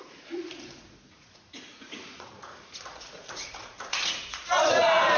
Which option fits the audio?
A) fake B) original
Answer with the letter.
A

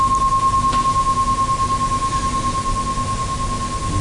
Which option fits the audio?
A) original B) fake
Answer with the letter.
A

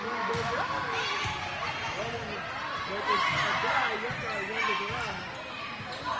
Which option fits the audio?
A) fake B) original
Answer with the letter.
B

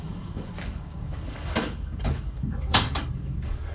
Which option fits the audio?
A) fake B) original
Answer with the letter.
A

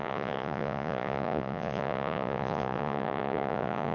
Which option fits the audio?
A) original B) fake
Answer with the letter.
B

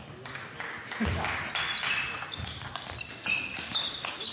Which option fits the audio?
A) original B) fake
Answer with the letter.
A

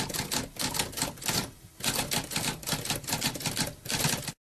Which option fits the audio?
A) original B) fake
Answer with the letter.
A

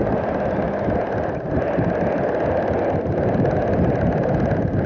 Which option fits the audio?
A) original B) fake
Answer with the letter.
B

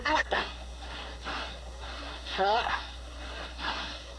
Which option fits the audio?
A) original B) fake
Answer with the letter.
B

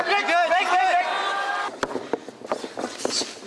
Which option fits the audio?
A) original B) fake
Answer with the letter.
A